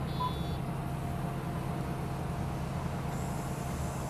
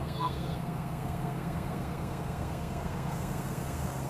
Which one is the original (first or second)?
first